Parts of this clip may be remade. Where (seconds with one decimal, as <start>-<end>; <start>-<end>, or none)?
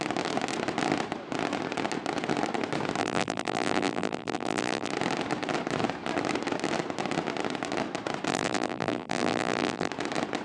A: 3.0-4.9; 8.3-9.9